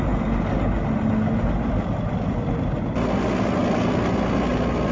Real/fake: real